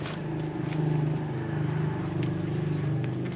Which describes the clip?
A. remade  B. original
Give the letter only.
B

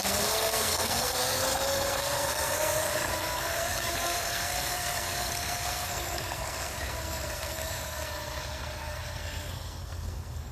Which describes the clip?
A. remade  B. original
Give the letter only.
A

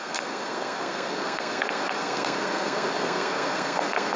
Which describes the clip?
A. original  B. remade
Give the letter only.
B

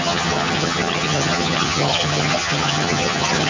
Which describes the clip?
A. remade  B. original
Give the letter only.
A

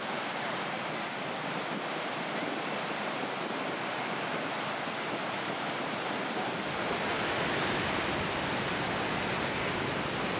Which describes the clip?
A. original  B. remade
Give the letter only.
A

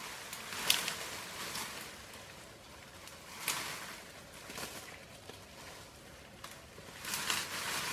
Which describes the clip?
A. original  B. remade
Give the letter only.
A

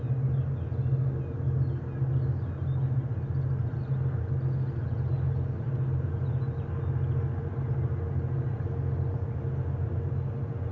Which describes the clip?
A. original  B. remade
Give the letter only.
A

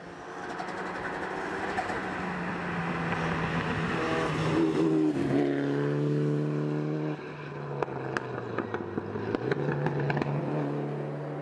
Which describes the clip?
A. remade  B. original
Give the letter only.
B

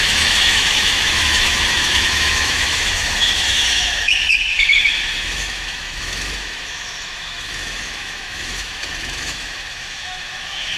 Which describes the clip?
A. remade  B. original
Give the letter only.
A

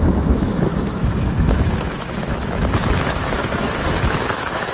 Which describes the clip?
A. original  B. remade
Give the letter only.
B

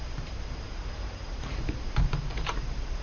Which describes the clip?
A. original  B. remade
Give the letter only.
B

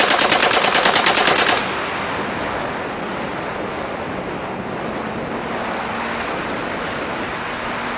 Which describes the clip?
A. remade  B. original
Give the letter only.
B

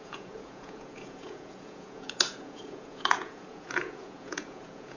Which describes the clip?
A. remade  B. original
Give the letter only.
A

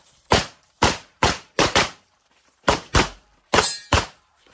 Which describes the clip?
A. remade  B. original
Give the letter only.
A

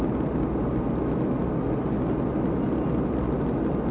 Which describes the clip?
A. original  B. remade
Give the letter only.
A